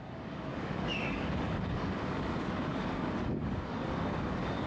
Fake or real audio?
fake